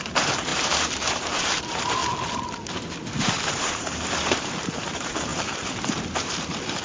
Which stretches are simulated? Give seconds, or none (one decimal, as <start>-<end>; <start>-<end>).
0.0-2.0; 3.2-6.8